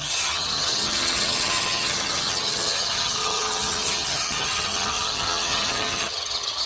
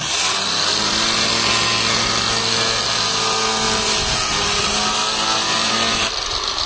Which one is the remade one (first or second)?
first